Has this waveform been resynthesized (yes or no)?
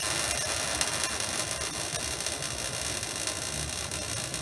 no